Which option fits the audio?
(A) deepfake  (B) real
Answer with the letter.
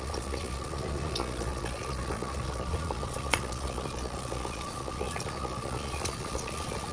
A